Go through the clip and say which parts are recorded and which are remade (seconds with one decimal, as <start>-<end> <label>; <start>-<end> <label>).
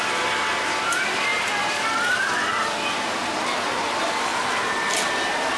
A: 0.0-1.3 recorded; 1.3-3.8 remade; 3.8-5.6 recorded